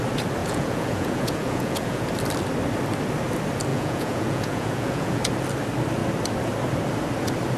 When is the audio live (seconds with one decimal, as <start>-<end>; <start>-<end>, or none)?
0.0-0.4; 2.1-3.7; 5.2-7.6